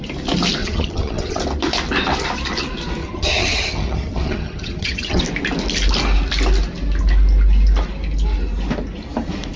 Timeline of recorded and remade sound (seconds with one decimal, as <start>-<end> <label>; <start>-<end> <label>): 0.0-0.6 recorded; 0.6-1.4 remade; 1.4-3.0 recorded; 3.0-5.2 remade; 5.2-9.6 recorded